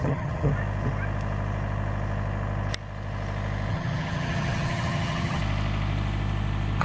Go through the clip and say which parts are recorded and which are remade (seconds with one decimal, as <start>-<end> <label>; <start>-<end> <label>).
0.0-0.5 remade; 0.5-3.7 recorded; 3.7-5.4 remade; 5.4-6.8 recorded